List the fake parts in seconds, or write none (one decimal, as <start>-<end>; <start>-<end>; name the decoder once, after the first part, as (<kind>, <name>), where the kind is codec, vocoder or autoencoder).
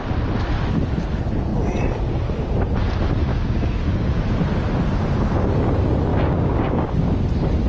3.3-4.1 (codec, DAC); 6.1-7.2